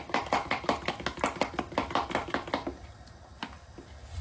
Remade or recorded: recorded